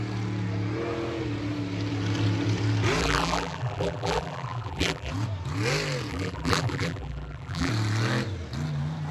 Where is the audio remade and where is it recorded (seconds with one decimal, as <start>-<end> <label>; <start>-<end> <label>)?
0.0-3.0 recorded; 3.0-5.1 remade; 5.1-6.1 recorded; 6.1-7.7 remade; 7.7-9.1 recorded